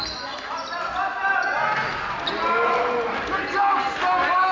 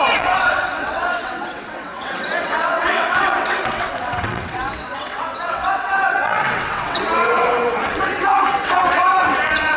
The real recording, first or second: first